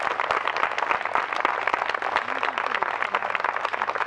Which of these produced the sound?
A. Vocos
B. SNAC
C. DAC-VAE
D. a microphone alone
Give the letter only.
D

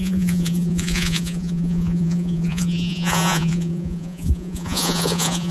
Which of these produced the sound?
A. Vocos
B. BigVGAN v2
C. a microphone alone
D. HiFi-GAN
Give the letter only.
A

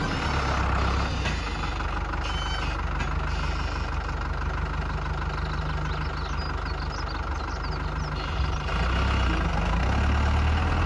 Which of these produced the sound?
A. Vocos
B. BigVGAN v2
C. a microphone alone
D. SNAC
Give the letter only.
C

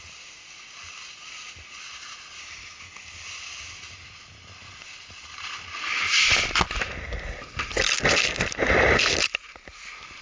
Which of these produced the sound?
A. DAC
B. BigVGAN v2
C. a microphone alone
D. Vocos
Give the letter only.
C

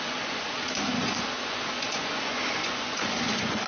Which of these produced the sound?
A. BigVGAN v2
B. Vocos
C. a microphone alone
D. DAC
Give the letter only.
B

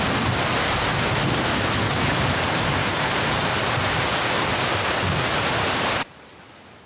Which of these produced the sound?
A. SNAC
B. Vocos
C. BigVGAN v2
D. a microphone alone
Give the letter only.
D